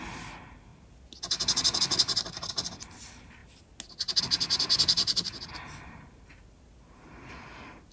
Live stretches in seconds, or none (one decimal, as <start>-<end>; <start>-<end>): 0.0-7.9